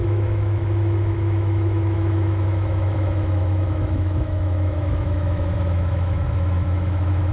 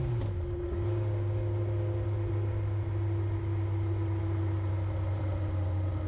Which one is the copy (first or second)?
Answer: first